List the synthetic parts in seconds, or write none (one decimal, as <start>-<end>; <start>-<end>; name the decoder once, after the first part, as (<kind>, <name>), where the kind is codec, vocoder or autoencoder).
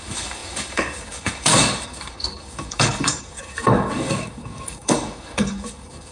0.0-6.1 (codec, DAC)